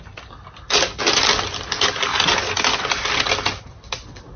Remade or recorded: recorded